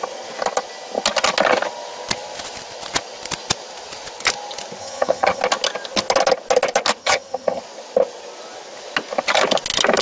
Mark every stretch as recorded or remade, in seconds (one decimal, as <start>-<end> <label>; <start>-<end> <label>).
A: 0.0-4.8 recorded; 4.8-5.4 remade; 5.4-7.0 recorded; 7.0-7.6 remade; 7.6-10.0 recorded